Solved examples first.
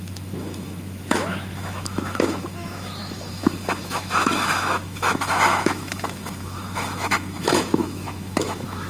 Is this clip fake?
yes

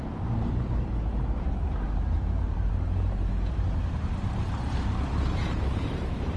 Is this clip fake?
yes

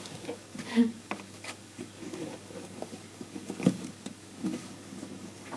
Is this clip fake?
yes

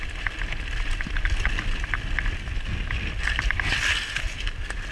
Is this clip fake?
no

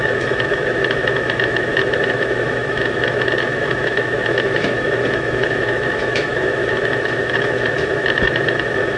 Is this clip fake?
yes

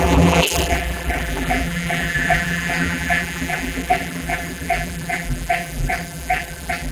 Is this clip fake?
yes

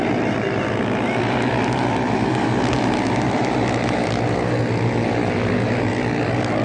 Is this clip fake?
no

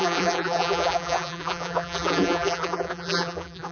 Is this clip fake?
yes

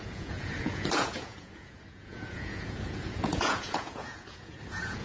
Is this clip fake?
yes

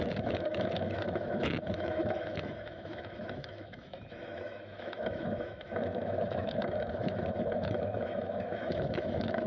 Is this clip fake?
yes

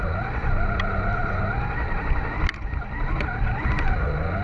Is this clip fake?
no